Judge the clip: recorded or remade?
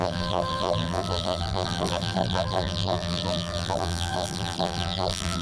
remade